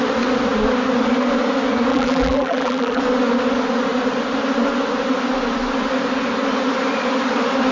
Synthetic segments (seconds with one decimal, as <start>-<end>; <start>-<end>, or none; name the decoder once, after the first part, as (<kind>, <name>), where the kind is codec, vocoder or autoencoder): 1.9-3.0 (vocoder, BigVGAN v2)